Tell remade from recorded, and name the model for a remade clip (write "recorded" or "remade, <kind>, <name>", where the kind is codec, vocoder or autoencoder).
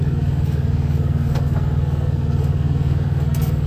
remade, codec, SNAC